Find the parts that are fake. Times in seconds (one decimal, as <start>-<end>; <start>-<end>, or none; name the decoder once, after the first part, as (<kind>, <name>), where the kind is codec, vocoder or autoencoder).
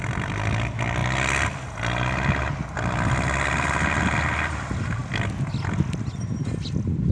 none